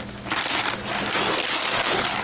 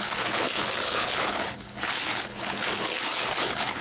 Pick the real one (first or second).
first